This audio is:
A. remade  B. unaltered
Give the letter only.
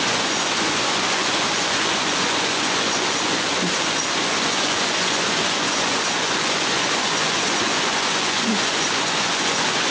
A